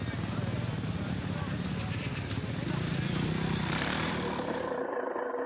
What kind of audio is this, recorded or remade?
recorded